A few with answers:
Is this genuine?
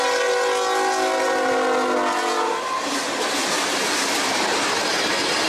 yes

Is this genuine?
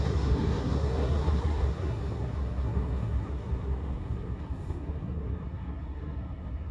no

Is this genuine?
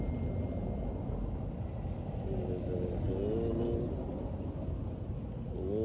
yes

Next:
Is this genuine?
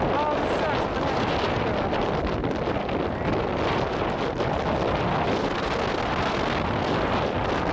yes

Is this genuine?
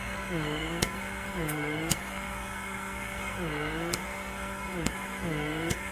no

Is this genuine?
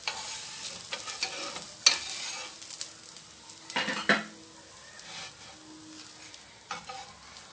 yes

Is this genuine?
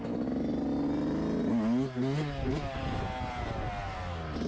yes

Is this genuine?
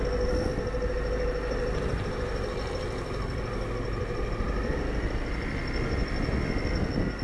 yes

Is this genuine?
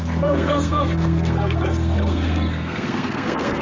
no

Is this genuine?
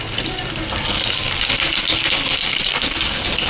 yes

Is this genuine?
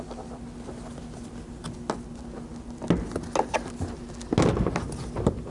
yes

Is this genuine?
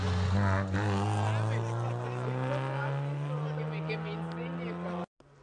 yes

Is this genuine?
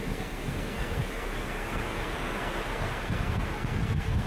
no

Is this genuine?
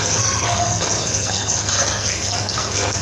no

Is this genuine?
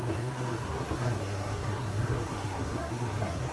no